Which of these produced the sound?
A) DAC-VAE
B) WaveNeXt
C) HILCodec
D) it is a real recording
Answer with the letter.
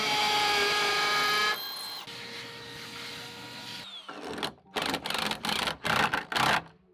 D